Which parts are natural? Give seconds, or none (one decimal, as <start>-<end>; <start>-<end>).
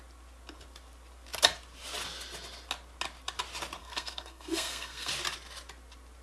0.0-3.8; 5.1-6.2